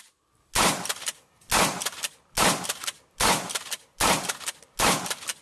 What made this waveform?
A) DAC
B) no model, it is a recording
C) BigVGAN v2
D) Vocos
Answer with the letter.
B